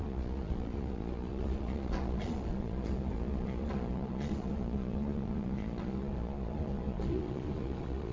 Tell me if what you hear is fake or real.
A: fake